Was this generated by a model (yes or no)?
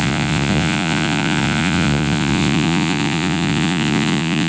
yes